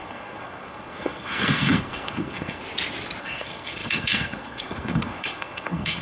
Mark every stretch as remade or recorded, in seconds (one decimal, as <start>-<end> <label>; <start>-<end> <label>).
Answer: 0.0-2.6 remade; 2.6-3.2 recorded; 3.2-6.0 remade

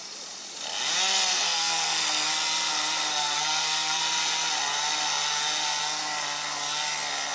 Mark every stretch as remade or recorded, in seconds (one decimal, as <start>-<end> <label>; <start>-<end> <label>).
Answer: 0.0-1.3 recorded; 1.3-2.3 remade; 2.3-3.1 recorded; 3.1-4.0 remade; 4.0-7.3 recorded